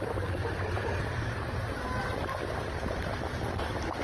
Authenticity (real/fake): real